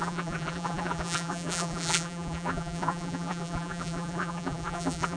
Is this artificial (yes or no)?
yes